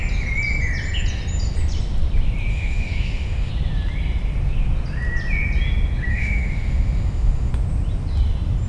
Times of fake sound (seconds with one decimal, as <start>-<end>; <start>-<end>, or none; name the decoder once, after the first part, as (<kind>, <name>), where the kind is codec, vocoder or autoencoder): 2.5-3.5 (autoencoder, DAC-VAE); 6.1-7.5

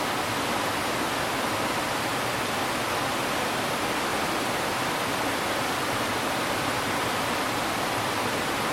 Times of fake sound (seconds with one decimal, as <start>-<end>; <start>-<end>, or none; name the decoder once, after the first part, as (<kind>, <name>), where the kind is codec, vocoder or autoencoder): none

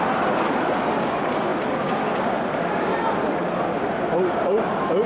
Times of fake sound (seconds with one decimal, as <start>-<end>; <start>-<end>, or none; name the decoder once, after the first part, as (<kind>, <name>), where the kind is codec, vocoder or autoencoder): none

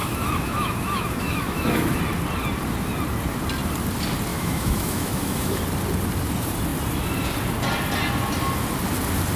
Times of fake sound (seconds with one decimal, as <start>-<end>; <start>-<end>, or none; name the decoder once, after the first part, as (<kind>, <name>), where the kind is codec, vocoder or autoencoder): 0.0-2.0 (autoencoder, DAC-VAE); 4.3-5.6

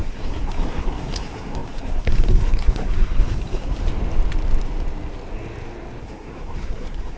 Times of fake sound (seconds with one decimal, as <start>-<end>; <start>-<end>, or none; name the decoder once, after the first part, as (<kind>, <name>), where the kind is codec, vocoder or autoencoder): 0.0-3.8 (codec, SNAC); 6.0-7.2

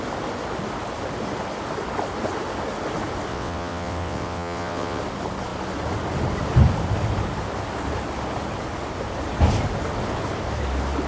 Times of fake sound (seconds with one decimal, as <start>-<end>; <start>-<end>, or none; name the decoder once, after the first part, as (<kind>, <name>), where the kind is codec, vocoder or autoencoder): 3.3-5.0 (vocoder, WaveNeXt)